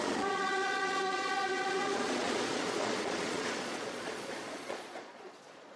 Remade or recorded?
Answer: remade